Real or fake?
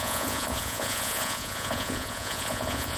fake